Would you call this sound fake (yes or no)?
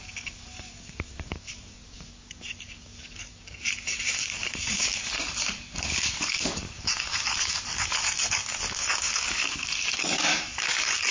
yes